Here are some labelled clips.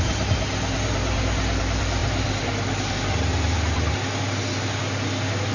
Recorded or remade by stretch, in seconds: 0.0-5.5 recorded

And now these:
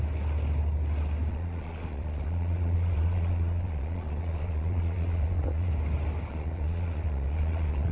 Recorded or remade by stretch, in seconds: 0.0-1.3 recorded; 1.3-5.7 remade; 5.7-6.3 recorded; 6.3-7.9 remade

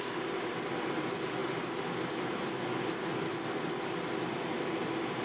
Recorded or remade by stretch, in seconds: 0.0-5.2 recorded

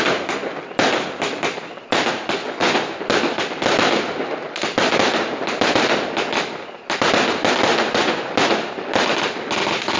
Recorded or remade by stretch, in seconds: 0.0-2.4 recorded; 2.4-3.0 remade; 3.0-7.7 recorded; 7.7-8.3 remade; 8.3-10.0 recorded